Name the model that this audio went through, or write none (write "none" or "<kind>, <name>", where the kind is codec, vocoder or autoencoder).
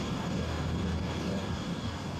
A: codec, DAC